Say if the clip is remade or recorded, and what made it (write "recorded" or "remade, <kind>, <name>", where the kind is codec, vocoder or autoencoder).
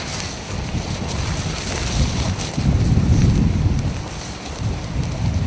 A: remade, vocoder, BigVGAN v2